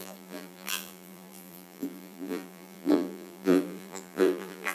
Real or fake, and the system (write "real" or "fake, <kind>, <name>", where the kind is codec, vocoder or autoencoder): fake, vocoder, BigVGAN v2